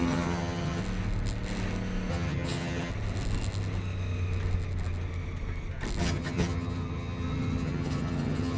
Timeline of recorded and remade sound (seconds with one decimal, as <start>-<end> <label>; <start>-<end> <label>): 0.0-0.8 remade; 0.8-2.1 recorded; 2.1-2.9 remade; 2.9-6.0 recorded; 6.0-8.6 remade